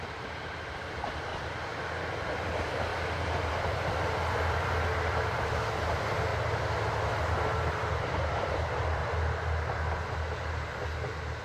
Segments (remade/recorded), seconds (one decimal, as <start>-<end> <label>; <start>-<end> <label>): 0.0-1.3 remade; 1.3-1.9 recorded; 1.9-2.9 remade; 2.9-3.5 recorded; 3.5-6.3 remade; 6.3-8.0 recorded; 8.0-9.0 remade; 9.0-11.4 recorded